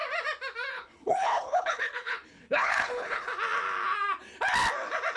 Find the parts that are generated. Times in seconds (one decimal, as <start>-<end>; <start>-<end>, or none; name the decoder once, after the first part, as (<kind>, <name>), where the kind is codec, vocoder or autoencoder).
0.7-3.3 (codec, HILCodec)